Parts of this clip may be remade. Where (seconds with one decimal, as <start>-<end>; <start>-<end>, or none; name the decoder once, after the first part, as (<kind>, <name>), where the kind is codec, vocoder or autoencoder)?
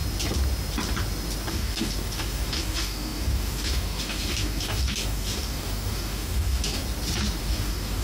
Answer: 1.5-6.8 (codec, DAC); 7.4-8.0